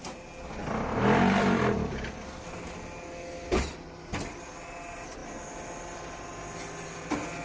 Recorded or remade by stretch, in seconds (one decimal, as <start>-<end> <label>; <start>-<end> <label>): 0.0-7.4 recorded